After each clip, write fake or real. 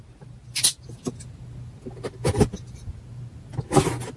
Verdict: real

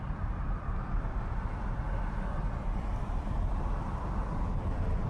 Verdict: real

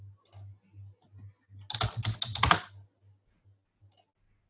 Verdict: real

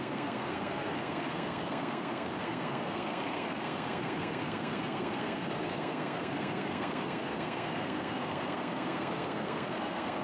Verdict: fake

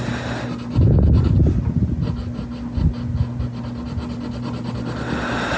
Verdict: real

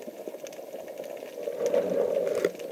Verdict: real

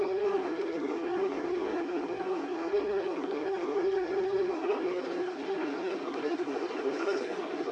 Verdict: fake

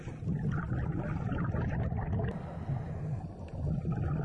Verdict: real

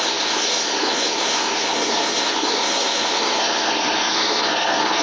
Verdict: fake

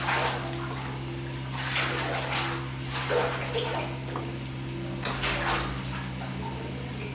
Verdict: real